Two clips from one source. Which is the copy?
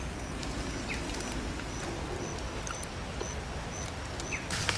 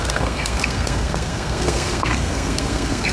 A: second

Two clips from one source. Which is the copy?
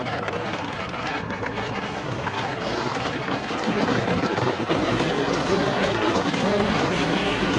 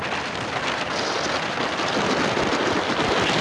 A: first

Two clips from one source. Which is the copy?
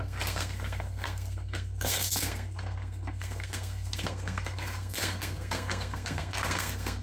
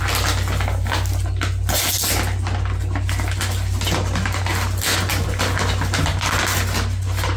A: first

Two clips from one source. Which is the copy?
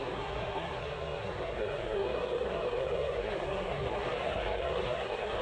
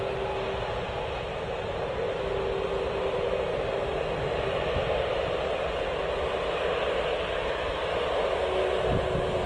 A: first